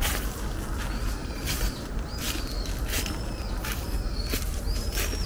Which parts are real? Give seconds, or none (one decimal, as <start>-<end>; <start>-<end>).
0.0-1.2; 2.2-5.3